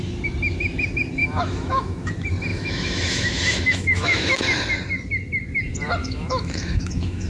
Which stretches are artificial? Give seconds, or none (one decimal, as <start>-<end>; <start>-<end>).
1.2-2.1; 2.5-4.4; 6.0-7.3